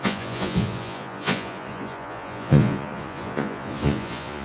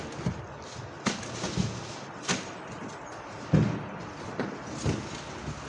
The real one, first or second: second